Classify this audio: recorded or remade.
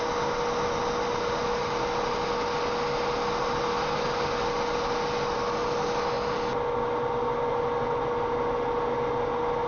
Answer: recorded